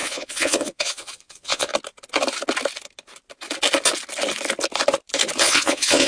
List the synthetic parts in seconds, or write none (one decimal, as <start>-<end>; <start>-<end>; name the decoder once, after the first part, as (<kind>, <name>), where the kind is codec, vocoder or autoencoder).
0.0-1.7 (vocoder, Vocos); 5.4-6.1